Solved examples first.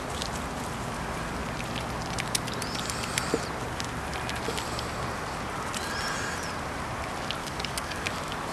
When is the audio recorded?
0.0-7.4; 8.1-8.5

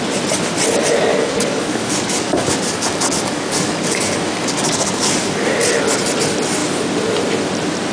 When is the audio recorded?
0.0-1.1; 5.7-7.9

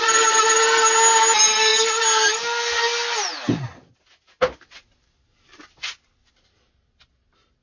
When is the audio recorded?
0.0-7.6

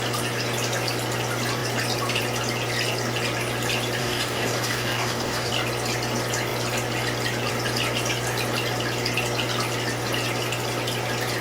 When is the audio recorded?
0.0-4.0; 5.5-11.4

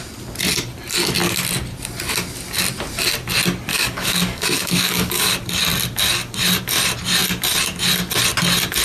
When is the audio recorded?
0.0-3.7; 5.3-8.8

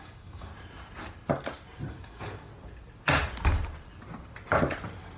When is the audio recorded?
0.5-1.9; 2.5-5.2